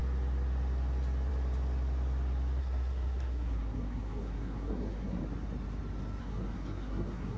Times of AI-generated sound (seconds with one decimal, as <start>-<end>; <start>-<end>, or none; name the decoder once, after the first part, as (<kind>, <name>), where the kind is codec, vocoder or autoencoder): 2.6-5.2 (codec, SNAC); 6.2-7.4